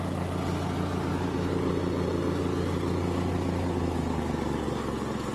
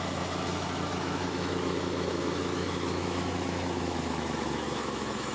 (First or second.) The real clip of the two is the first